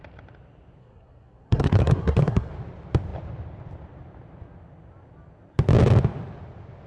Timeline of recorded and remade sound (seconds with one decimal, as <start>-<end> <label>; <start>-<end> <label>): 0.0-0.8 recorded; 0.8-2.5 remade; 2.5-6.9 recorded